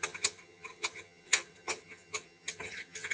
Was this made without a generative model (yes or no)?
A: no